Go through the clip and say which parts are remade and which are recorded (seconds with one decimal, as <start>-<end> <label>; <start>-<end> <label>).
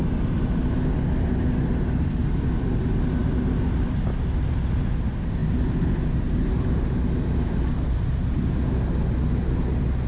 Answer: 0.0-10.1 recorded